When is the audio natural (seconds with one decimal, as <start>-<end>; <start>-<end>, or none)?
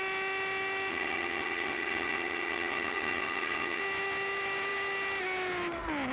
0.0-0.9; 3.8-6.1